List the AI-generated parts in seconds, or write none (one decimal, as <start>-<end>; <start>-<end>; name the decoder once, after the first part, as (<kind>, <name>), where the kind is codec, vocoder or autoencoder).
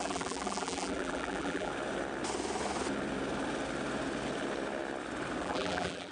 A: 0.0-1.7 (vocoder, BigVGAN v2); 5.4-6.1